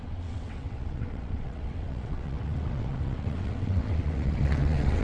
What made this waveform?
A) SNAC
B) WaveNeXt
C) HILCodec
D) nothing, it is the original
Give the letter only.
B